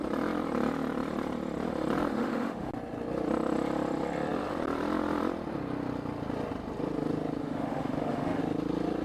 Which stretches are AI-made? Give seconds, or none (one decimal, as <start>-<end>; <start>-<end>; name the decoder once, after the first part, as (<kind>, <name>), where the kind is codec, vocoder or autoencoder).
2.1-2.7 (autoencoder, DAC-VAE); 7.4-8.4